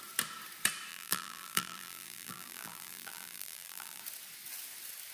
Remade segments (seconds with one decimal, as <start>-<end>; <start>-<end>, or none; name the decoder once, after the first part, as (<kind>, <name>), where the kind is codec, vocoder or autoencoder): 0.9-4.0 (vocoder, BigVGAN v2)